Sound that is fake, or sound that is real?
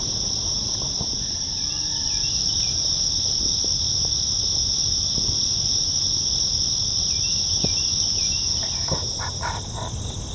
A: fake